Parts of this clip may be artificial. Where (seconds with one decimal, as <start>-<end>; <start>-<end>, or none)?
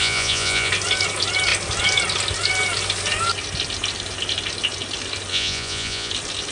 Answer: 0.0-0.7; 5.3-6.1